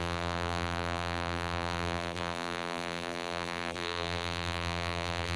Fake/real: fake